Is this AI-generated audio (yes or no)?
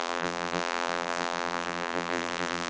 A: yes